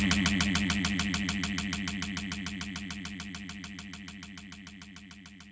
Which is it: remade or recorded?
recorded